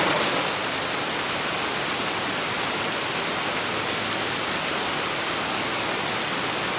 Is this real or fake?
real